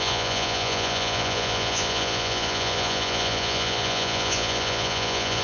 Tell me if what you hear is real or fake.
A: fake